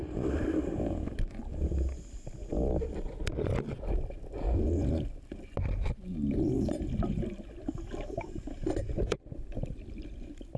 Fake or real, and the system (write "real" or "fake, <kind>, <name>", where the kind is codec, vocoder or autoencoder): real